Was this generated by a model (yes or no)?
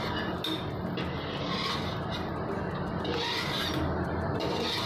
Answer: no